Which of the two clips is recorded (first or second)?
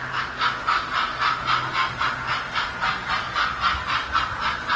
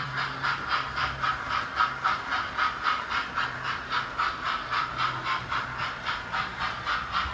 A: first